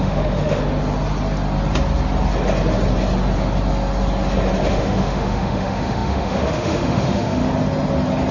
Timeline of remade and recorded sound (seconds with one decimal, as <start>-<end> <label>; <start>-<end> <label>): 0.0-0.6 remade; 0.6-4.7 recorded; 4.7-7.4 remade; 7.4-8.3 recorded